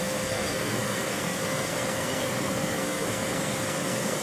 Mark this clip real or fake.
fake